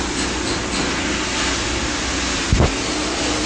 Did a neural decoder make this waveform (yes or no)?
no